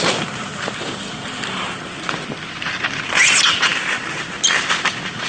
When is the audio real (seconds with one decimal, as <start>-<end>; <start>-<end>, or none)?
0.0-5.3